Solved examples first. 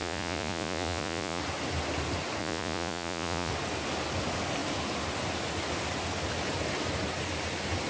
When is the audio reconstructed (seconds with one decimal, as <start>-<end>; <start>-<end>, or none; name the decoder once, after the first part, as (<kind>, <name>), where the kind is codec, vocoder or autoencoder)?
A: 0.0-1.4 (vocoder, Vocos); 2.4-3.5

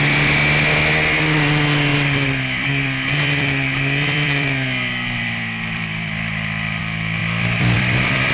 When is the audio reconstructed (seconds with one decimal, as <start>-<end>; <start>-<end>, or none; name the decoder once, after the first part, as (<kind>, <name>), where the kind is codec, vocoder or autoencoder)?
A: 1.9-6.8 (vocoder, BigVGAN v2); 7.2-8.3

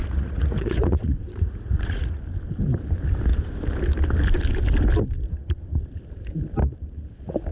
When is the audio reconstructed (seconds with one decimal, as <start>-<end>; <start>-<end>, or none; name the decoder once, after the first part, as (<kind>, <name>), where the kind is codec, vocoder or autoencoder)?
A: 0.0-2.2 (vocoder, Vocos)